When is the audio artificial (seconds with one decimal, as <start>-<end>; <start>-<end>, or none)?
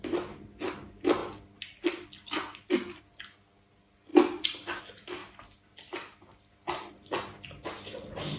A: none